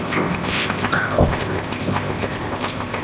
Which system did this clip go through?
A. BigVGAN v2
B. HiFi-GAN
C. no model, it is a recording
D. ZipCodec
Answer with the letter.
D